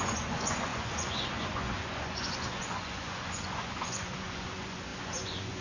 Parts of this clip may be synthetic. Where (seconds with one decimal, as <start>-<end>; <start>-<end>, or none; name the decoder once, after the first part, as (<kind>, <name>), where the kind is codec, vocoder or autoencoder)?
0.0-5.6 (vocoder, Vocos)